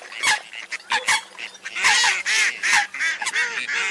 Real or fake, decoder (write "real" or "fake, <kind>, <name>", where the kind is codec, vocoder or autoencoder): real